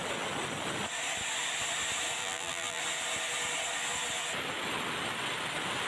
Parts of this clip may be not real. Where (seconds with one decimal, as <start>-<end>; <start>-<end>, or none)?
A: 2.2-2.8